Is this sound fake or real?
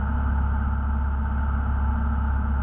real